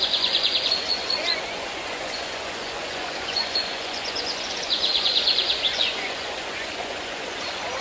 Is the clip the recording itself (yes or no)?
no